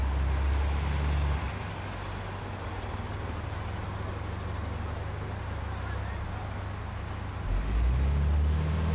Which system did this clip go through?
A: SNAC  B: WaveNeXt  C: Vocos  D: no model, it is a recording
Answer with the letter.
D